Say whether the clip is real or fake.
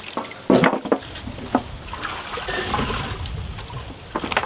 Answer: real